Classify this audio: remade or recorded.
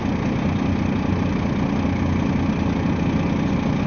recorded